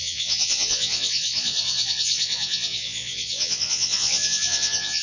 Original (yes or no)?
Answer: no